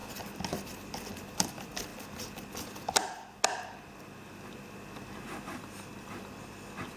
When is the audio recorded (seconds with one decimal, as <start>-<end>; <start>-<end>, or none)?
0.0-7.0